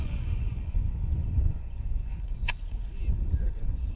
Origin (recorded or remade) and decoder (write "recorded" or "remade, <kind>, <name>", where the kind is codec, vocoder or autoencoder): remade, vocoder, Vocos